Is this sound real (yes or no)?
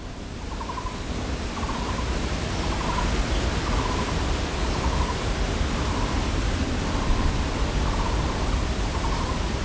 yes